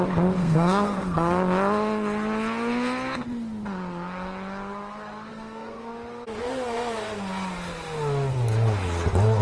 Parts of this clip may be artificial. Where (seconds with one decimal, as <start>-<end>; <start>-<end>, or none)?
0.4-1.4; 5.3-5.9